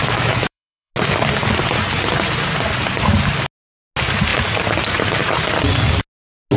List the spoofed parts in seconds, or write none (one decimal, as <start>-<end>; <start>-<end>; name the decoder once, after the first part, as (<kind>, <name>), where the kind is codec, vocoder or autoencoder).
0.0-0.9 (autoencoder, DAC-VAE)